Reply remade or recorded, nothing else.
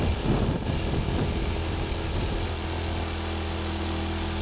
recorded